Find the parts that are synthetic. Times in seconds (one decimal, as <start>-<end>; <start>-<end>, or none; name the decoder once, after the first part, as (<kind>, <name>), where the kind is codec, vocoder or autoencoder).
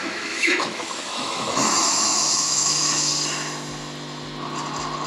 0.0-3.1 (autoencoder, DAC-VAE)